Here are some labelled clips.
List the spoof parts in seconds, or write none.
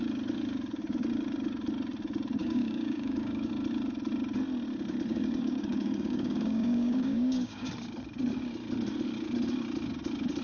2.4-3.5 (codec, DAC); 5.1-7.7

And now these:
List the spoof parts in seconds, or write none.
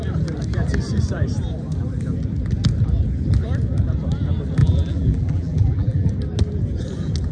4.6-6.1 (vocoder, BigVGAN v2)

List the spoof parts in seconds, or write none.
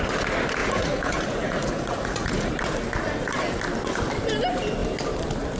0.6-2.5 (vocoder, Vocos)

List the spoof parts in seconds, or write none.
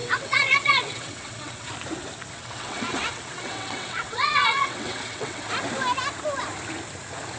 0.0-1.7 (vocoder, WaveNeXt); 2.3-5.5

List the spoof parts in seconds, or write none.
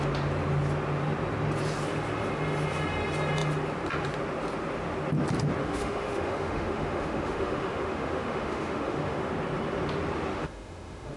5.6-9.3 (autoencoder, DAC-VAE); 10.3-11.2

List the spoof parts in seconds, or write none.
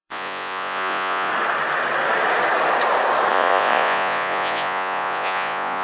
0.0-1.3 (vocoder, Vocos); 3.3-5.8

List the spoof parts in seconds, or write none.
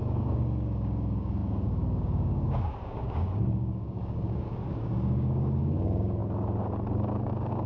0.0-6.2 (codec, DAC); 7.1-7.7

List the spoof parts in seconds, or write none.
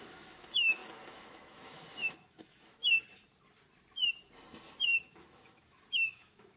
0.0-2.8 (autoencoder, DAC-VAE); 5.0-6.6